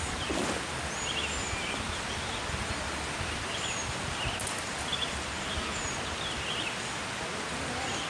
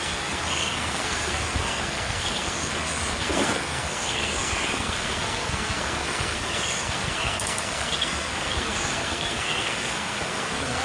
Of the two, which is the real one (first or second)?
first